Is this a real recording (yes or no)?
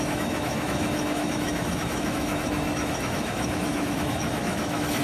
no